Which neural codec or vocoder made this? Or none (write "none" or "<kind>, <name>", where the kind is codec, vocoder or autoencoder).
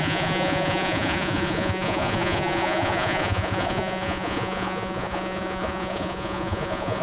vocoder, Vocos